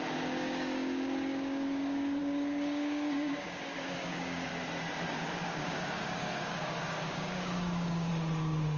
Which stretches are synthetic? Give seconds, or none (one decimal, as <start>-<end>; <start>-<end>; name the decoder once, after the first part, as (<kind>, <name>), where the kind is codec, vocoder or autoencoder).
0.0-4.5 (codec, DAC); 5.1-8.1